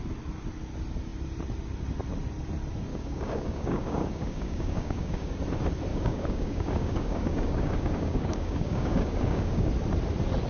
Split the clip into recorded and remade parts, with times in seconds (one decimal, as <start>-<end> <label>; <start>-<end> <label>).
0.0-2.9 recorded; 2.9-5.3 remade; 5.3-5.9 recorded; 5.9-9.7 remade; 9.7-10.5 recorded